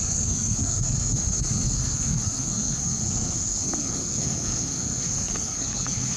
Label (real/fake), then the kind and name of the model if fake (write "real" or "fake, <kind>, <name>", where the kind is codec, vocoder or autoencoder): fake, codec, SNAC